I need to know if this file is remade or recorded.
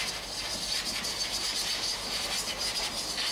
remade